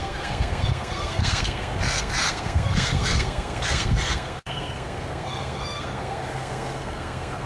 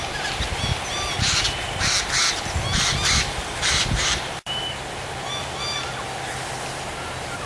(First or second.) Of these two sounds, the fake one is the first